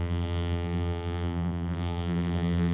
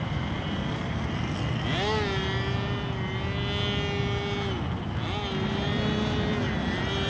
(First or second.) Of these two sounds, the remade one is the first